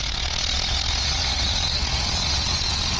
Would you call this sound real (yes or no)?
no